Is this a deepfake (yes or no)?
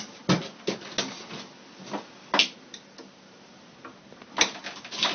no